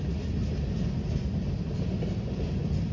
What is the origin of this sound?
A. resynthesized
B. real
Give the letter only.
B